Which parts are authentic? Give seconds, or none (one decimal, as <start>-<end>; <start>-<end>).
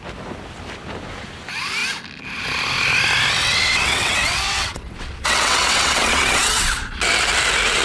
0.0-3.4; 7.0-7.8